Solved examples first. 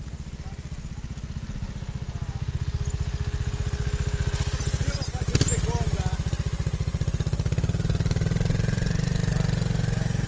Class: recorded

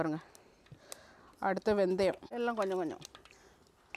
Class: recorded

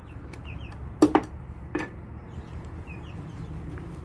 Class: remade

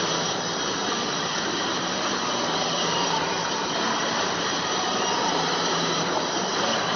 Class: remade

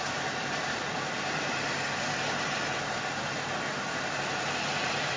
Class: remade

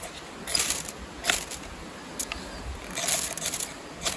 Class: recorded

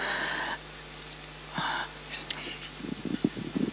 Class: recorded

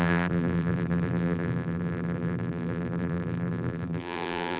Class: remade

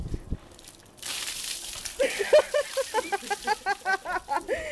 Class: remade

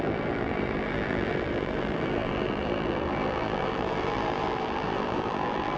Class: remade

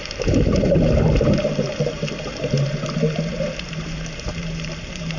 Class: remade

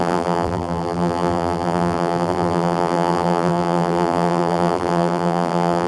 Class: remade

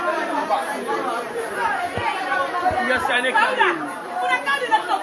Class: remade